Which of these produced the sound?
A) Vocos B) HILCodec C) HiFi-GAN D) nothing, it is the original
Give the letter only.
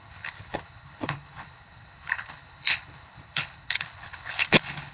B